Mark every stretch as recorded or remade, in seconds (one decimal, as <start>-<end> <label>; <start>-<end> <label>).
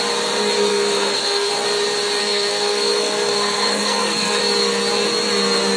0.0-0.7 recorded; 0.7-1.5 remade; 1.5-2.2 recorded; 2.2-4.4 remade; 4.4-5.8 recorded